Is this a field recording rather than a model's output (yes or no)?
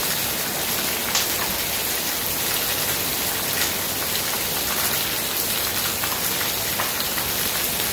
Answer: yes